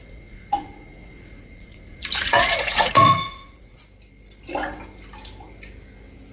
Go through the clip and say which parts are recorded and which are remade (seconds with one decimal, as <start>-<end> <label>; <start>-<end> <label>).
0.0-3.8 remade; 3.8-6.3 recorded